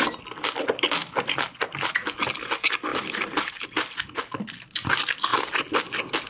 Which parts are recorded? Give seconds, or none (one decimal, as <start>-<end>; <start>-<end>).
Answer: 0.0-1.0; 1.9-2.9; 4.2-6.3